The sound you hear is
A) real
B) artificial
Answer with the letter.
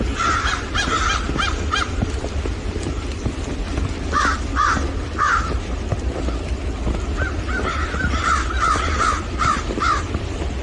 A